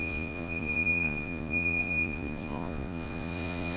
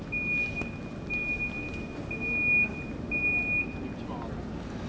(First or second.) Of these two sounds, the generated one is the first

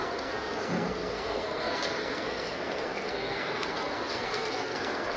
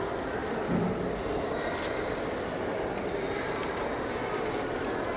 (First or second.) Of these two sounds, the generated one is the first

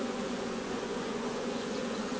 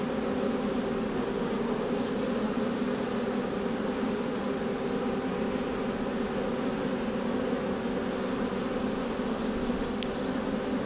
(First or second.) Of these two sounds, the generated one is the first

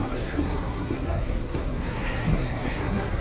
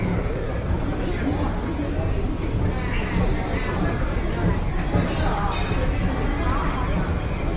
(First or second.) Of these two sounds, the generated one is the first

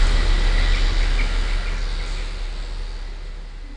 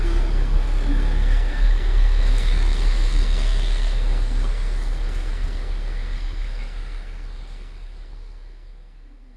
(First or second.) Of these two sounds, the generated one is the second